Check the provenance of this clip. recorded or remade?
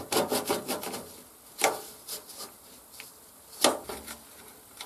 recorded